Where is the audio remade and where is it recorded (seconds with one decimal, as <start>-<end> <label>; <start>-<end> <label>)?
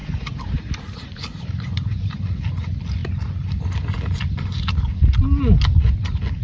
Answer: 0.0-2.2 remade; 2.2-6.4 recorded